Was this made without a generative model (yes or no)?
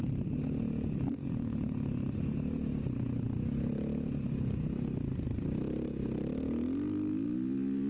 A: yes